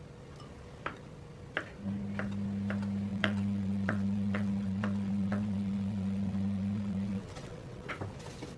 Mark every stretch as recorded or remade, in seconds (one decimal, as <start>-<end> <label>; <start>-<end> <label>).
0.0-3.1 recorded; 3.1-7.9 remade; 7.9-8.6 recorded